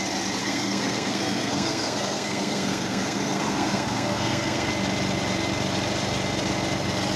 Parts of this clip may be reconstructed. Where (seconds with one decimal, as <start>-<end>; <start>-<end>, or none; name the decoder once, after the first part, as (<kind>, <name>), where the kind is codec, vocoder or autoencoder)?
0.4-4.7 (codec, SNAC)